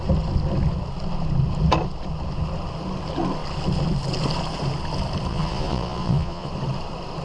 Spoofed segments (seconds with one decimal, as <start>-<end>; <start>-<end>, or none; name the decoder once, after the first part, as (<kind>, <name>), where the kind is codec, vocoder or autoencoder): 5.3-6.5 (vocoder, Vocos)